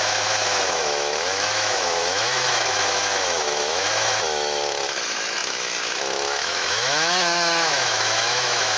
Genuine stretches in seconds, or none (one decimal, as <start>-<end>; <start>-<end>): none